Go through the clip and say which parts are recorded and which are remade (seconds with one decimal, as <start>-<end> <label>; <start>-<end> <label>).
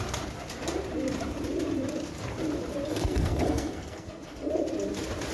0.0-2.9 recorded; 2.9-4.5 remade; 4.5-5.3 recorded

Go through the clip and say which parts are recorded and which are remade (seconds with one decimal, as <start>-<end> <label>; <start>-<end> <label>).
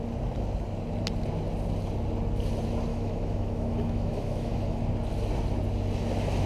0.0-2.9 recorded; 2.9-4.8 remade; 4.8-6.5 recorded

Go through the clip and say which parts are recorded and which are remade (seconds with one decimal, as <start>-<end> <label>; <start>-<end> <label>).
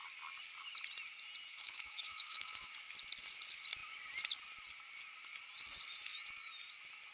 0.0-1.5 recorded; 1.5-2.7 remade; 2.7-7.1 recorded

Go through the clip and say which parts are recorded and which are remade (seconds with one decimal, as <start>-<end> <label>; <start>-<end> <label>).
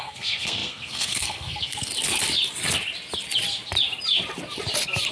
0.0-1.9 remade; 1.9-5.1 recorded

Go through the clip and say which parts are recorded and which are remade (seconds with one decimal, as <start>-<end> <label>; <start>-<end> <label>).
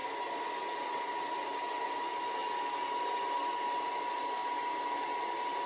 0.0-5.7 recorded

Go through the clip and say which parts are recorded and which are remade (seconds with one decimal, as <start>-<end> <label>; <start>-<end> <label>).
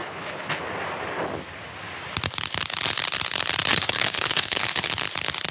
0.0-0.6 remade; 0.6-3.7 recorded; 3.7-4.9 remade; 4.9-5.5 recorded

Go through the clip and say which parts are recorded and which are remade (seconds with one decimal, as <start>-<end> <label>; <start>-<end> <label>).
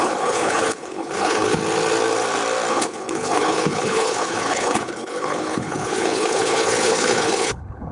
0.0-1.6 remade; 1.6-2.7 recorded; 2.7-7.9 remade